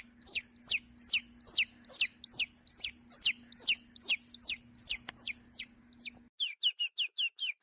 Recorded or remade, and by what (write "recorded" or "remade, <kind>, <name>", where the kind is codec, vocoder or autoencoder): recorded